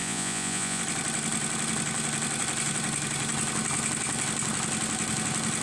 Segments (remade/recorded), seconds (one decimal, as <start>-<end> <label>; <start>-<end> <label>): 0.0-0.8 remade; 0.8-5.6 recorded